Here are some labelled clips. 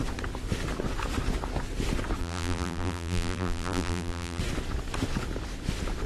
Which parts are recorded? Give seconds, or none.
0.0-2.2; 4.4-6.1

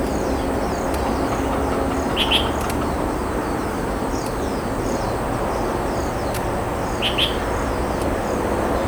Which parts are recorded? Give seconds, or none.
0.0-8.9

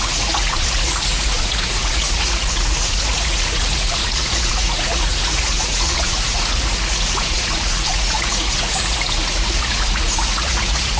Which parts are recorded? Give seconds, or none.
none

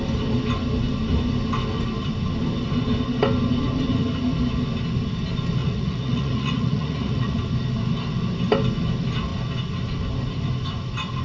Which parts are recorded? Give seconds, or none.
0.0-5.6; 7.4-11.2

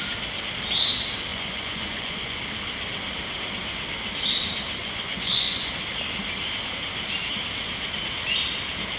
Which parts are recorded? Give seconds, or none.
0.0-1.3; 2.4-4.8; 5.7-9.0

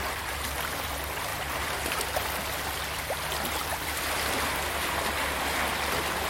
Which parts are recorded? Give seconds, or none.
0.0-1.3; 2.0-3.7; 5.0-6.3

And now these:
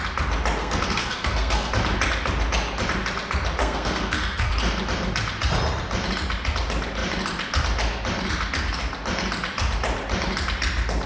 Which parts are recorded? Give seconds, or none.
0.0-0.6; 1.7-3.6; 4.5-11.1

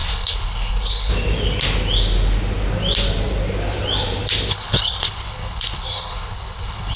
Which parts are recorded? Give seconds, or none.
1.1-4.5